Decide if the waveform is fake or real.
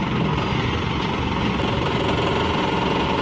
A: real